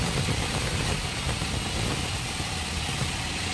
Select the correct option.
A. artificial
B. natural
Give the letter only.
B